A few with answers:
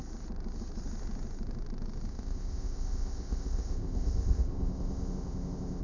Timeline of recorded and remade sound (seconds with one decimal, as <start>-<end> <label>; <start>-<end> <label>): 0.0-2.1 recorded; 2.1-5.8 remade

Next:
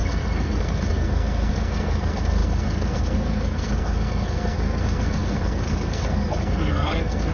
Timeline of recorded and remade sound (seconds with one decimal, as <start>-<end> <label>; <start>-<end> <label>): 0.0-7.3 remade

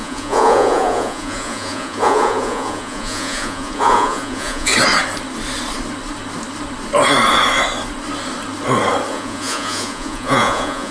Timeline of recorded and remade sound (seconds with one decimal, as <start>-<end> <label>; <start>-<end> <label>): 0.0-4.7 remade; 4.7-9.1 recorded; 9.1-10.9 remade